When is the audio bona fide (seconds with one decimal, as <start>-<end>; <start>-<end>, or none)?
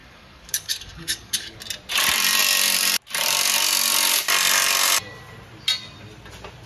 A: 1.6-6.7